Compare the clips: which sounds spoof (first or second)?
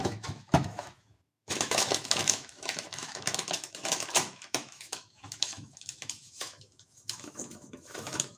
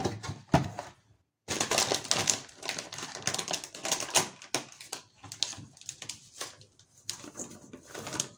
first